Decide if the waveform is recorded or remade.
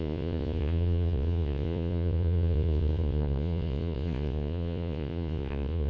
remade